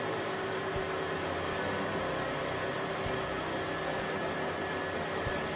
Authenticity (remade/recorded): recorded